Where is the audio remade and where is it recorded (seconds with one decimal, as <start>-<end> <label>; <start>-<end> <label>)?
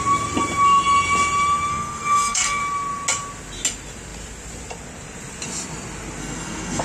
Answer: 0.0-1.7 recorded; 1.7-2.6 remade; 2.6-6.2 recorded; 6.2-6.8 remade